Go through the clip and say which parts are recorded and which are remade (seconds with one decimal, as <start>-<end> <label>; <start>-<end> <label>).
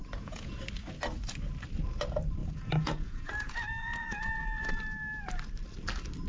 0.0-0.5 remade; 0.5-2.4 recorded; 2.4-4.7 remade; 4.7-6.3 recorded